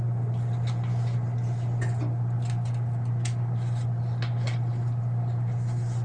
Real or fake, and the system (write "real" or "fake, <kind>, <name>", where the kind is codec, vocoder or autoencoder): real